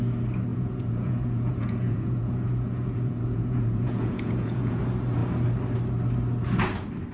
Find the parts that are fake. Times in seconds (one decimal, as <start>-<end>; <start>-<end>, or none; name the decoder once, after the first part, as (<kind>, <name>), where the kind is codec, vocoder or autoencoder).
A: 0.5-4.8 (vocoder, Vocos)